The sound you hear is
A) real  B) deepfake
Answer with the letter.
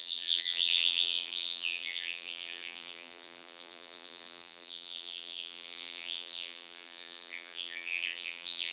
B